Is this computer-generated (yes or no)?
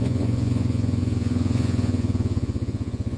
yes